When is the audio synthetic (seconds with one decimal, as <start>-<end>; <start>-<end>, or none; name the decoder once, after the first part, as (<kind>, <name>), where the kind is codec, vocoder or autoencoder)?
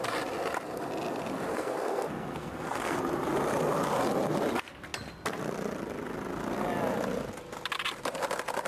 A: 1.5-3.0 (codec, SNAC)